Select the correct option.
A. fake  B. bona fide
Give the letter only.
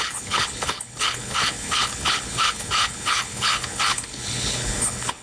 A